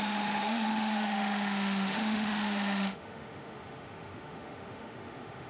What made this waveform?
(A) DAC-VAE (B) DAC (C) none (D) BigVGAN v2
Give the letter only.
A